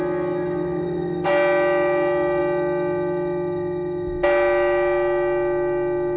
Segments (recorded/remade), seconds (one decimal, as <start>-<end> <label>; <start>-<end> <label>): 0.0-6.2 recorded